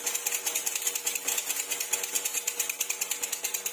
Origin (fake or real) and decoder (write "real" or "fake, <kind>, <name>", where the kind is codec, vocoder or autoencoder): real